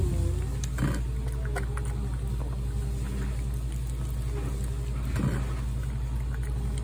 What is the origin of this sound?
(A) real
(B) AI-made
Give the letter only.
A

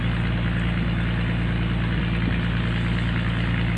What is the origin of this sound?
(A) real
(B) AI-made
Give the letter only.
A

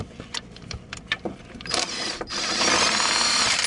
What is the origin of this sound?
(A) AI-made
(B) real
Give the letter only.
A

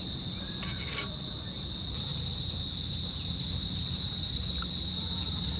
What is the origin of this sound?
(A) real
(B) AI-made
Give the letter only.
B